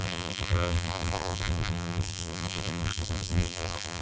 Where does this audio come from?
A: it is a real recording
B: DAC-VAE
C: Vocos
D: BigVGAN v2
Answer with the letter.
D